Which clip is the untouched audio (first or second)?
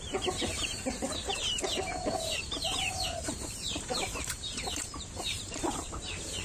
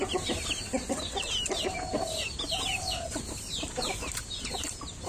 second